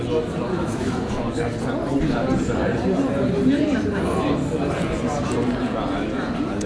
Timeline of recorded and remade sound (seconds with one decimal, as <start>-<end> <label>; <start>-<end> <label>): 0.0-0.5 recorded; 0.5-1.2 remade; 1.2-6.7 recorded

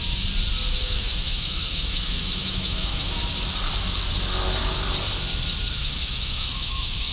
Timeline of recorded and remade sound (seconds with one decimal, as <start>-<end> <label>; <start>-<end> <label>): 0.0-0.7 recorded; 0.7-3.2 remade; 3.2-5.7 recorded; 5.7-7.1 remade

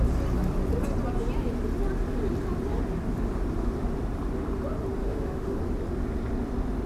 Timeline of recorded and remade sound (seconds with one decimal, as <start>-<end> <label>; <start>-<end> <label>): 0.0-5.0 recorded; 5.0-5.6 remade; 5.6-6.9 recorded

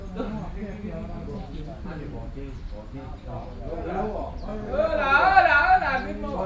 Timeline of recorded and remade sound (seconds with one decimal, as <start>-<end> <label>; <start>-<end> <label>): 0.0-6.5 recorded

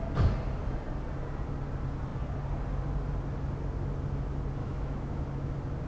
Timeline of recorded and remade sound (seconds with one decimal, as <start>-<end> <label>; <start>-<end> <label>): 0.0-4.6 recorded; 4.6-5.2 remade; 5.2-5.9 recorded

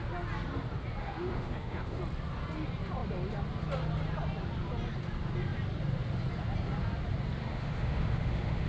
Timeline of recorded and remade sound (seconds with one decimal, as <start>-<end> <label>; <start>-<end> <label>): 0.0-1.0 recorded; 1.0-2.0 remade; 2.0-7.4 recorded; 7.4-8.7 remade